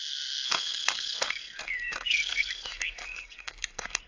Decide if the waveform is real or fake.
fake